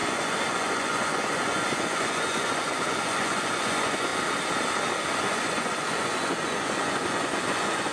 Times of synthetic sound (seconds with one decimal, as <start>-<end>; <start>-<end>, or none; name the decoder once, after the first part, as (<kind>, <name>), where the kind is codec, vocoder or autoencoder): 0.0-4.1 (vocoder, Vocos); 5.1-7.9